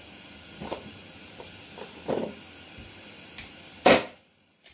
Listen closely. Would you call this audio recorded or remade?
remade